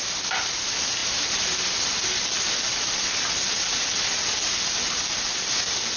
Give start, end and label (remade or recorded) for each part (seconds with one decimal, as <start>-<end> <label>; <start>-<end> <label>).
0.0-6.0 recorded